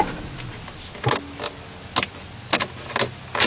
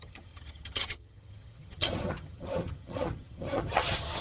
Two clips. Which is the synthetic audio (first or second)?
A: second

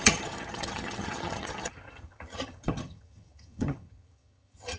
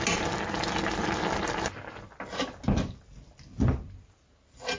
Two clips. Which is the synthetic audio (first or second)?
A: first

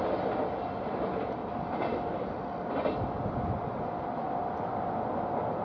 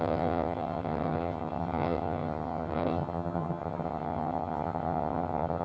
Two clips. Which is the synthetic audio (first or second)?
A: second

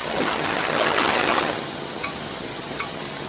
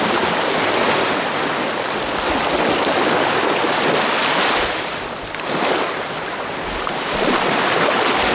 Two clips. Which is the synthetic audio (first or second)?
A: first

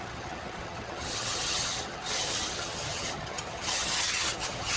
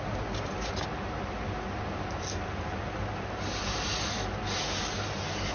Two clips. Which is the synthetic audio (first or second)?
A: first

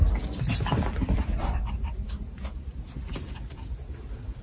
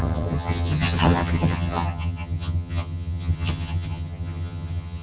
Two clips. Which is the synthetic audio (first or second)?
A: second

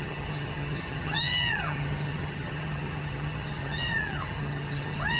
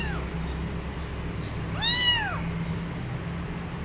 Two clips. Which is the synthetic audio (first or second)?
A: first